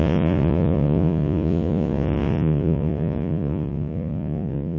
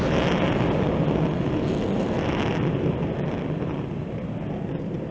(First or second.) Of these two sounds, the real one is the second